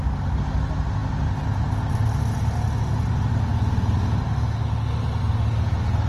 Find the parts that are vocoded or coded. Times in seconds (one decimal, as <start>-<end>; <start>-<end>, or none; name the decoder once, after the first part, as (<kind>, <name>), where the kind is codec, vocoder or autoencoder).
none